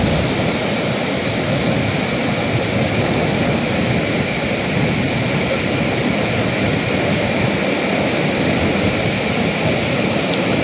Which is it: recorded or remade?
recorded